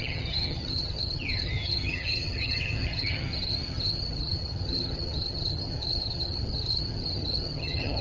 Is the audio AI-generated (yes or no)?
yes